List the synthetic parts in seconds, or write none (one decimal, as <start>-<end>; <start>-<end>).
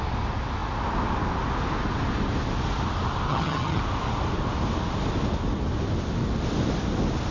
3.3-3.8